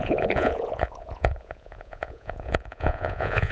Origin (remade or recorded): remade